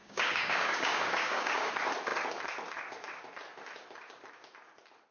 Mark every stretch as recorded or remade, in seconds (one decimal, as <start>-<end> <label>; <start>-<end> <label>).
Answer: 0.0-1.7 remade; 1.7-5.1 recorded